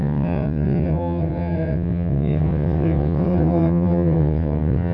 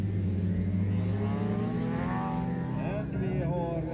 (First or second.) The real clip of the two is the second